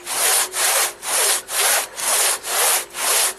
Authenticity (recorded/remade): recorded